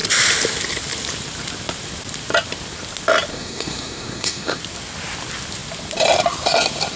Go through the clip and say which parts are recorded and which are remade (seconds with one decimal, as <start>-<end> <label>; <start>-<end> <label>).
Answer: 0.0-3.3 recorded; 3.3-4.6 remade; 4.6-7.0 recorded

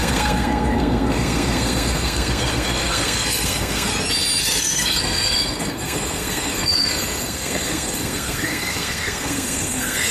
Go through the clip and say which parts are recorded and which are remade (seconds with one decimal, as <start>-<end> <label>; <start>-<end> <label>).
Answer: 0.0-3.9 remade; 3.9-4.4 recorded; 4.4-10.1 remade

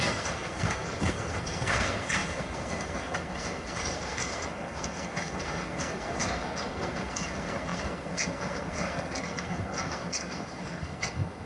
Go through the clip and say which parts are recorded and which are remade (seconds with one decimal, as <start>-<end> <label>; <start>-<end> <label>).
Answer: 0.0-11.5 remade

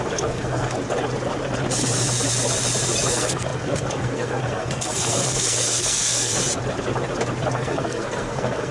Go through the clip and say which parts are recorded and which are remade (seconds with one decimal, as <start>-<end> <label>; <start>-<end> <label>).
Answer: 0.0-0.8 remade; 0.8-3.1 recorded; 3.1-6.3 remade; 6.3-7.5 recorded; 7.5-8.7 remade

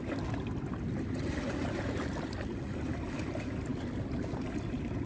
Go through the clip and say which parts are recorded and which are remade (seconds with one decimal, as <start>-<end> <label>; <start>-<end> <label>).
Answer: 0.0-5.1 recorded

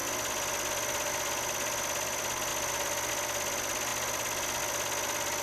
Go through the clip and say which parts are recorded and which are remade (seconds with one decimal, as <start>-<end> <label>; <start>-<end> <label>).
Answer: 0.0-5.4 recorded